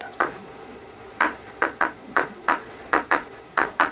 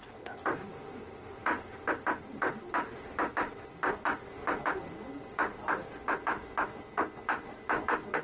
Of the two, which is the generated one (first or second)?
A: first